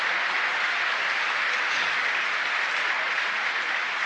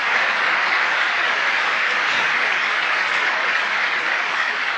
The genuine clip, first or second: first